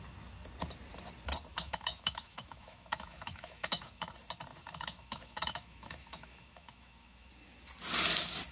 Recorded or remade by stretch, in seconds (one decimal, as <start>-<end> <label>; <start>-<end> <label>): 0.0-1.5 recorded; 1.5-4.1 remade; 4.1-4.5 recorded; 4.5-7.3 remade; 7.3-8.5 recorded